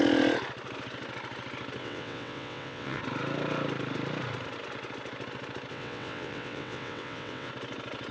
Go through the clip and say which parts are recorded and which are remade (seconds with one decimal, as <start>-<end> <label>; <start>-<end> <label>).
0.0-1.8 recorded; 1.8-3.0 remade; 3.0-5.7 recorded; 5.7-7.5 remade; 7.5-8.1 recorded